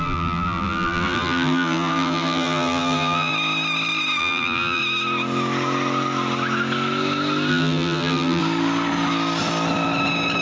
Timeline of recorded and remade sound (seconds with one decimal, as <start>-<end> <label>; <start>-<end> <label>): 0.0-3.3 remade; 3.3-4.2 recorded; 4.2-4.8 remade; 4.8-7.5 recorded; 7.5-8.4 remade; 8.4-10.4 recorded